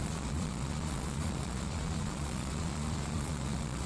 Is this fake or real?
fake